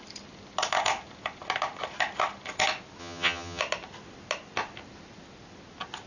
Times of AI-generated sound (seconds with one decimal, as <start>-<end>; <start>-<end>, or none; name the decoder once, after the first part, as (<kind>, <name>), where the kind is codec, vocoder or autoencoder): 3.0-3.6 (vocoder, HiFi-GAN)